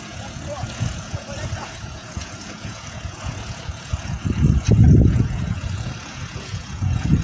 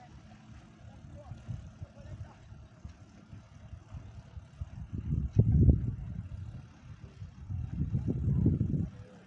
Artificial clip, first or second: first